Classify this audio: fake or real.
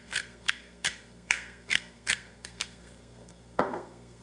fake